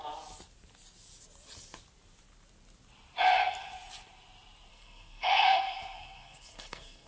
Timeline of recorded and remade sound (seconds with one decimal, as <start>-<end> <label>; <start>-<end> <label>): 0.0-4.7 recorded; 4.7-7.1 remade